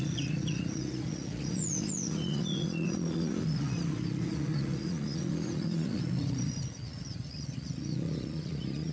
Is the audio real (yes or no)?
no